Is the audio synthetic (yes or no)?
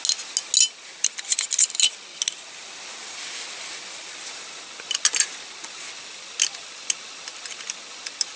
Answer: no